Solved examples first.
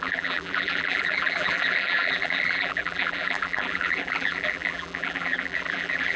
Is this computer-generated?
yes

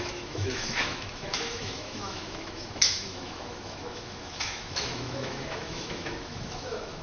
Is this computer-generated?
yes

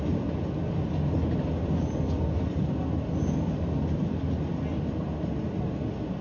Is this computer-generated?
no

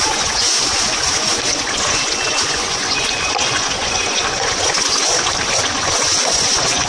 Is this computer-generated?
yes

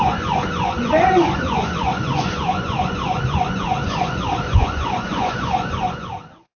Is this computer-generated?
yes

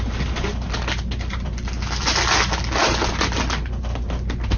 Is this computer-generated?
no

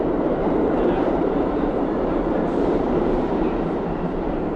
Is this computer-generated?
yes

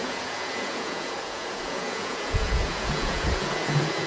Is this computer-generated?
yes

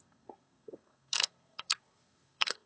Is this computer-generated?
yes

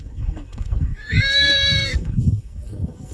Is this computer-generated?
yes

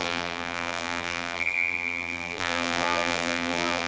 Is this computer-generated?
yes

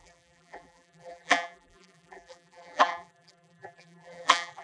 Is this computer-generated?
yes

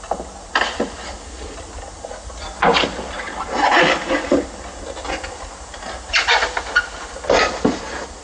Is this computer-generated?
no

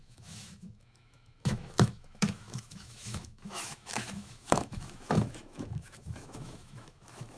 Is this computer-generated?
yes